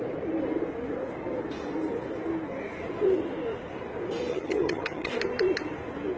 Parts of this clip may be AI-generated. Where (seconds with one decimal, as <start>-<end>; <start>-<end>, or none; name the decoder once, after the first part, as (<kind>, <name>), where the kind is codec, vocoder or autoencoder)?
4.3-5.1 (vocoder, HiFi-GAN)